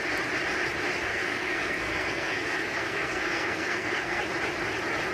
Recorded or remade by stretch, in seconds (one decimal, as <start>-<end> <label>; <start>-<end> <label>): 0.0-1.1 recorded; 1.1-4.2 remade; 4.2-5.1 recorded